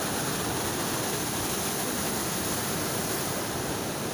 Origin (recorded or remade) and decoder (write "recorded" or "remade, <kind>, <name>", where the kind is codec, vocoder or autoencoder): remade, vocoder, BigVGAN v2